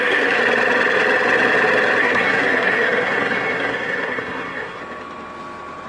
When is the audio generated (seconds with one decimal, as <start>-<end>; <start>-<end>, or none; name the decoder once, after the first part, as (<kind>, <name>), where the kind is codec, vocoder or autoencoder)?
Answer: 0.0-0.4 (codec, SNAC); 2.0-4.8